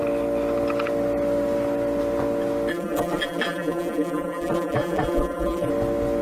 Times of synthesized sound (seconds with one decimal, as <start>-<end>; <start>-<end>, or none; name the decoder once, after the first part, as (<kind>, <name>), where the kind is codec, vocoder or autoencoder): 2.7-5.7 (vocoder, BigVGAN v2)

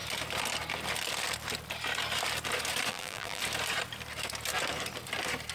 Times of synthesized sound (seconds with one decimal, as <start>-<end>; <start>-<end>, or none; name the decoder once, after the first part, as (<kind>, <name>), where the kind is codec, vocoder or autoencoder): 2.9-3.4 (vocoder, BigVGAN v2)